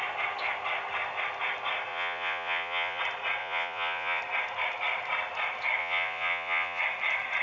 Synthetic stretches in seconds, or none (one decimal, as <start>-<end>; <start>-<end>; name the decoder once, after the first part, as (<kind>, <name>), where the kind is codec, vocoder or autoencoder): 1.9-3.0 (vocoder, Vocos); 3.4-4.2; 5.8-6.8

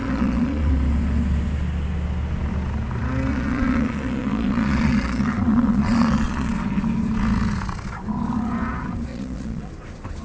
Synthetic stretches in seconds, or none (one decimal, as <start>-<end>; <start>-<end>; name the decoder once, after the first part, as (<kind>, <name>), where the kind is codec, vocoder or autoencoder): 0.0-0.7 (vocoder, Vocos); 3.3-6.5; 9.1-9.7

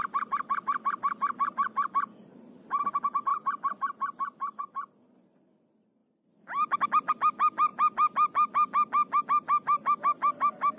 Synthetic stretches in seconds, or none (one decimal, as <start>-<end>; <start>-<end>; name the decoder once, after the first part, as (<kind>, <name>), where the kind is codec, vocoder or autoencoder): none

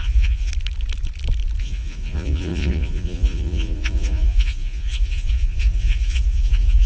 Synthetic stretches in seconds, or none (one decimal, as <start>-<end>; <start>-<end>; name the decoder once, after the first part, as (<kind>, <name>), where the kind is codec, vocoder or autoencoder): 0.0-0.5 (vocoder, Vocos); 1.6-6.9

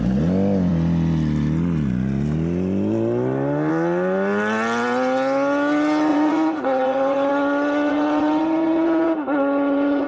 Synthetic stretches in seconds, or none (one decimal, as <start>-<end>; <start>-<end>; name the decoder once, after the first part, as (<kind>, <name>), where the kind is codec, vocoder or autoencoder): 6.1-7.3 (vocoder, Vocos); 7.9-10.1

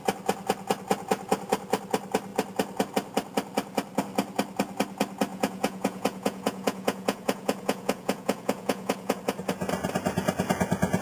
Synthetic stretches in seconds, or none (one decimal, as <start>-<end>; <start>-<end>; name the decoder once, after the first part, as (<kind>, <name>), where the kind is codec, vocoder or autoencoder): 5.3-9.2 (vocoder, Vocos)

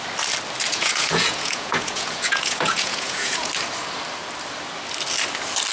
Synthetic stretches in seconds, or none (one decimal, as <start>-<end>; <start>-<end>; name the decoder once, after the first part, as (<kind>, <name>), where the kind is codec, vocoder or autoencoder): 0.7-3.5 (vocoder, Vocos)